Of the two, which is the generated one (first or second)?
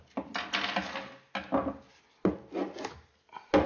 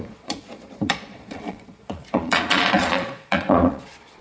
second